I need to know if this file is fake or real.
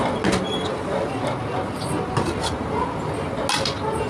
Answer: real